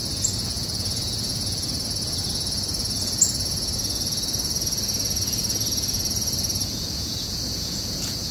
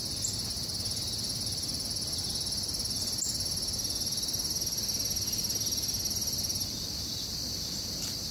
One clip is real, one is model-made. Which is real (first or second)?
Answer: second